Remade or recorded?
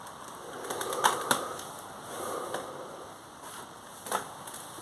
recorded